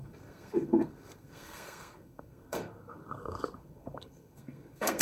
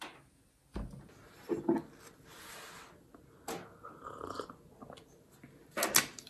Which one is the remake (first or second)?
first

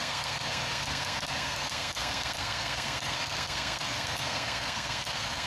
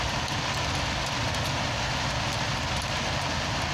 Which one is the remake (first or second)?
first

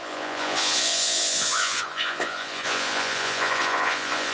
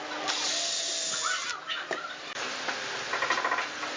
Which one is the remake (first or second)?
first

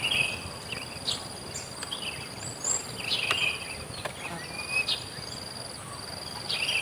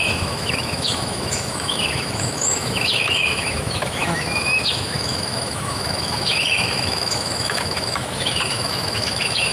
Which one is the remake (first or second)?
second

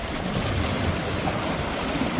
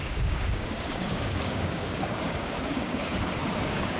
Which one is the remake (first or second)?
second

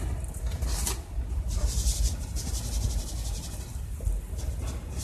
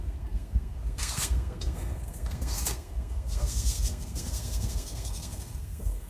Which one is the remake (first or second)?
second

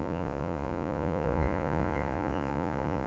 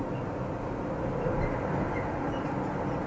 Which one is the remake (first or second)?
first